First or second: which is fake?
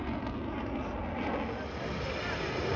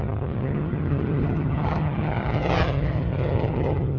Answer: second